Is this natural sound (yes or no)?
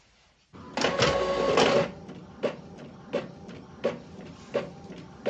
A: yes